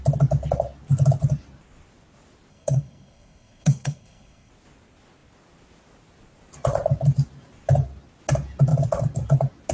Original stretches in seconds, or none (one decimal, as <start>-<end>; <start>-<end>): 0.0-2.5; 4.5-9.7